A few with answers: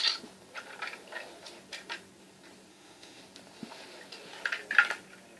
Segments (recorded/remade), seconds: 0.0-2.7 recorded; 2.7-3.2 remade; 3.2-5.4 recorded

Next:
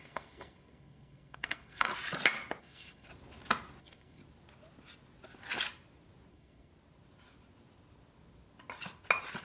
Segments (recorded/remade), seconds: 0.0-1.9 remade; 1.9-2.6 recorded; 2.6-3.1 remade; 3.1-3.8 recorded; 3.8-4.2 remade; 4.2-6.3 recorded; 6.3-6.7 remade; 6.7-9.4 recorded

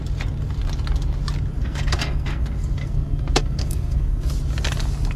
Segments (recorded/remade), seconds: 0.0-1.6 recorded; 1.6-4.3 remade; 4.3-5.2 recorded

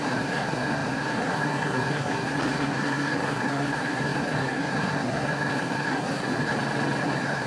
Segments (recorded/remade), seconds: 0.0-6.5 remade; 6.5-7.0 recorded; 7.0-7.5 remade

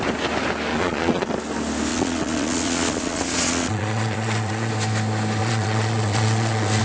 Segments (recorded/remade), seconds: 0.0-0.7 recorded; 0.7-1.3 remade; 1.3-1.9 recorded; 1.9-4.7 remade; 4.7-5.4 recorded; 5.4-6.8 remade